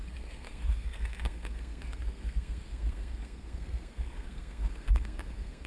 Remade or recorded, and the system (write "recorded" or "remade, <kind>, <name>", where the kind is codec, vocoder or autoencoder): remade, codec, SNAC